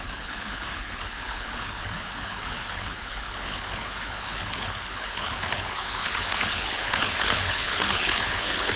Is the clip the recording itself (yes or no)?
no